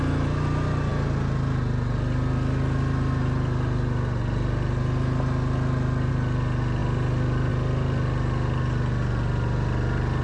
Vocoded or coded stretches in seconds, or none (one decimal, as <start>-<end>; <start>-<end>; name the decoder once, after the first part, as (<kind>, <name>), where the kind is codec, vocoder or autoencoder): none